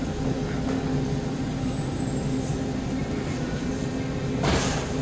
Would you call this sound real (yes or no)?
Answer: yes